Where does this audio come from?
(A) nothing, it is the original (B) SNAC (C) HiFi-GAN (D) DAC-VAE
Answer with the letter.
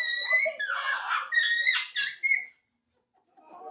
A